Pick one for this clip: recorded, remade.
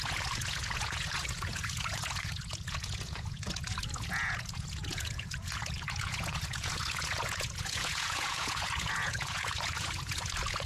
remade